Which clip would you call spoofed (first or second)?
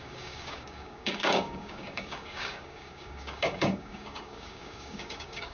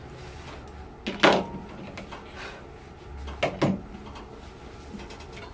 first